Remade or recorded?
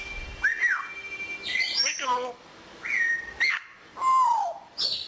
recorded